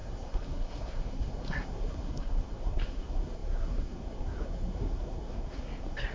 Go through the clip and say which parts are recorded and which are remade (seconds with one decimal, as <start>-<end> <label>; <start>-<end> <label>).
0.0-6.1 remade